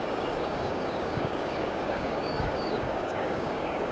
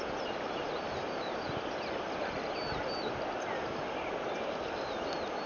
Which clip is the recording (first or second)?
second